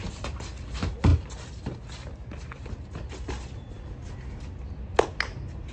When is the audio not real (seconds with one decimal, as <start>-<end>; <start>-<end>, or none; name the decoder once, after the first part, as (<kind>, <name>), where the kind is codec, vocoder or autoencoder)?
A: none